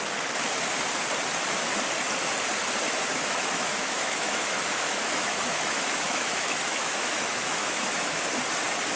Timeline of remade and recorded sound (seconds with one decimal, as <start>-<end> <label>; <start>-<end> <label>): 0.0-3.1 recorded; 3.1-8.2 remade; 8.2-9.0 recorded